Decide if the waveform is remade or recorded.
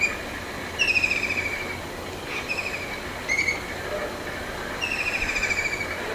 recorded